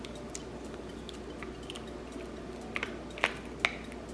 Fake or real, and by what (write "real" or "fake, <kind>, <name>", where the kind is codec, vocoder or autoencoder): real